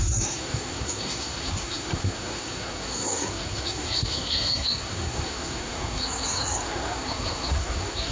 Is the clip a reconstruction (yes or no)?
yes